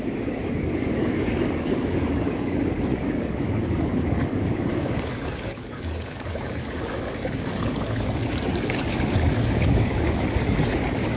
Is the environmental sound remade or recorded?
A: remade